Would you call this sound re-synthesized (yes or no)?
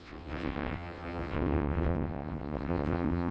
yes